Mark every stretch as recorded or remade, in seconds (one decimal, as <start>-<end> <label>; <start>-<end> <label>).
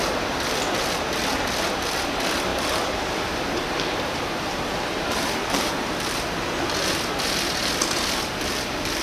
0.0-2.5 recorded; 2.5-5.7 remade; 5.7-9.0 recorded